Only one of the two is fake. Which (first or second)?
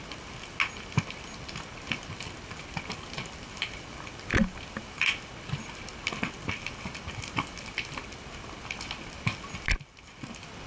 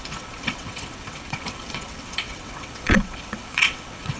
second